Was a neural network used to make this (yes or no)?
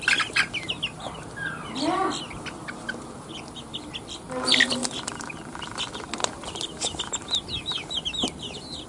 yes